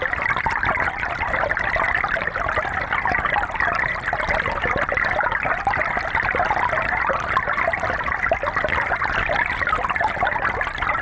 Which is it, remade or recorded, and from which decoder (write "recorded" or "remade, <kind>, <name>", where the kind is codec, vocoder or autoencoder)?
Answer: recorded